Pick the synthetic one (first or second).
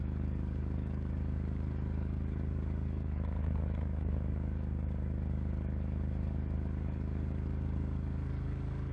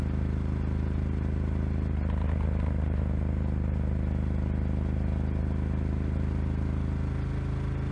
first